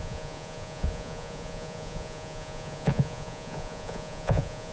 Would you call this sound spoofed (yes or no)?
yes